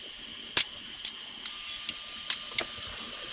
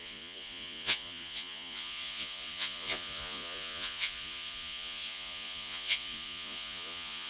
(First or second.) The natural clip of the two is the first